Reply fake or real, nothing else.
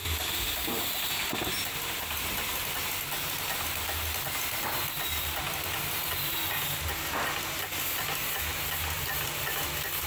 real